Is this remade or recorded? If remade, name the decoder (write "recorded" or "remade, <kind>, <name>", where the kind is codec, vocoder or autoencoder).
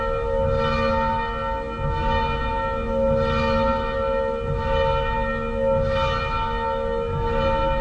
recorded